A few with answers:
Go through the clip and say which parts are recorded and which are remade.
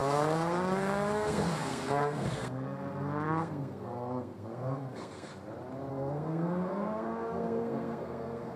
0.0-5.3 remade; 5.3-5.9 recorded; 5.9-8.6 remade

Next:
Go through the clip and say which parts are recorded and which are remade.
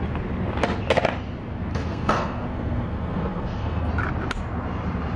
0.0-1.7 recorded; 1.7-3.9 remade; 3.9-5.2 recorded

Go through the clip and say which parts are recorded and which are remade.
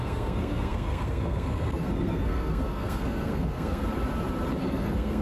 0.0-3.8 remade; 3.8-4.6 recorded; 4.6-5.2 remade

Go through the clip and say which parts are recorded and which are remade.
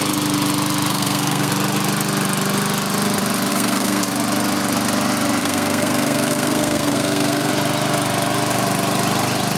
0.0-0.9 recorded; 0.9-1.5 remade; 1.5-3.5 recorded; 3.5-4.0 remade; 4.0-5.4 recorded; 5.4-7.5 remade; 7.5-9.6 recorded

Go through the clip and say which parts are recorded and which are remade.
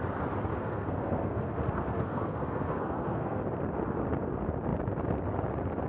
0.0-0.5 recorded; 0.5-3.4 remade; 3.4-5.9 recorded